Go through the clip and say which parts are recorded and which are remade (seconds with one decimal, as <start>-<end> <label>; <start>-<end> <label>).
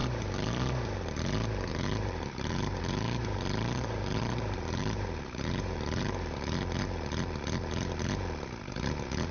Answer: 0.0-1.2 remade; 1.2-1.7 recorded; 1.7-6.4 remade; 6.4-9.3 recorded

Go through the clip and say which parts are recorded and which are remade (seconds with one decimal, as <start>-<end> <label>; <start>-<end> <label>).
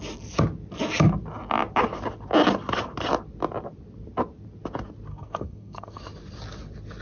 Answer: 0.0-5.1 recorded; 5.1-6.0 remade; 6.0-7.0 recorded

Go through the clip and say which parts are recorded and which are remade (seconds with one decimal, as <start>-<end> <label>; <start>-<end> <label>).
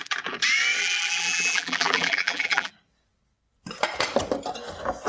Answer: 0.0-0.8 recorded; 0.8-2.7 remade; 2.7-5.1 recorded